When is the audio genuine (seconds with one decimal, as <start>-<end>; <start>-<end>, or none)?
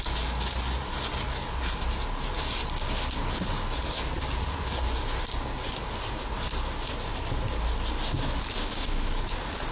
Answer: 0.0-8.6; 9.1-9.7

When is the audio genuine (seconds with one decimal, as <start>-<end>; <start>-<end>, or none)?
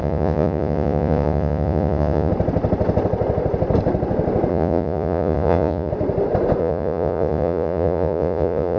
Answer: 2.3-4.5; 5.9-6.6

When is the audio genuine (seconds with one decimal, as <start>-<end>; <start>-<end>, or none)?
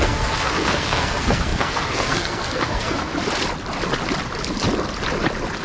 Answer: 3.1-5.6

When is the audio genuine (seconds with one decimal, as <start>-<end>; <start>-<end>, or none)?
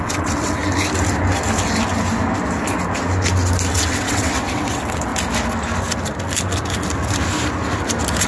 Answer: 0.6-3.7; 5.1-8.3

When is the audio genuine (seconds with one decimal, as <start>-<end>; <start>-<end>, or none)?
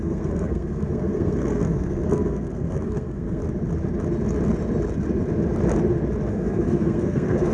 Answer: 3.4-6.3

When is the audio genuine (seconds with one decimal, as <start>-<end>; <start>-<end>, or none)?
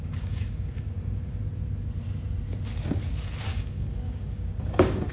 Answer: 1.4-3.4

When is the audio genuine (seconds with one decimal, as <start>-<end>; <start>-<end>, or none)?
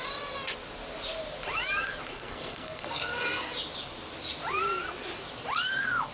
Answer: 0.0-2.1; 3.5-6.1